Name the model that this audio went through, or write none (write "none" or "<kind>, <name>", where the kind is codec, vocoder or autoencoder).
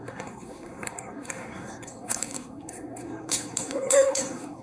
codec, SNAC